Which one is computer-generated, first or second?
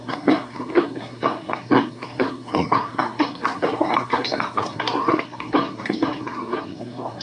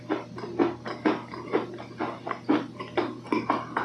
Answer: first